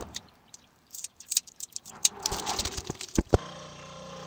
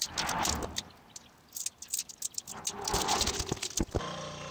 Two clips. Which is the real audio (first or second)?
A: second